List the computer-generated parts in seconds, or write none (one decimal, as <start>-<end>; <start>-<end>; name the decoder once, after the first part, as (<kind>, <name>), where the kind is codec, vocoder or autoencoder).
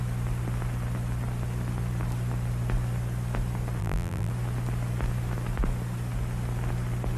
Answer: 3.8-4.3 (vocoder, BigVGAN v2)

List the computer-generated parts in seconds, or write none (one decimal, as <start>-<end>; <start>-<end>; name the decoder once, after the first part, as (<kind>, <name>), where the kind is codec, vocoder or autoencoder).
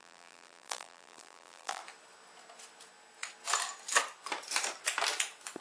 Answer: 0.0-1.8 (vocoder, BigVGAN v2)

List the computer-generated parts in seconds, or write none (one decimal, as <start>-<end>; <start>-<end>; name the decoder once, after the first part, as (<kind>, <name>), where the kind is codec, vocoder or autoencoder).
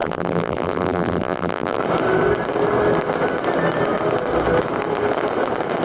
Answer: 0.0-1.8 (vocoder, BigVGAN v2)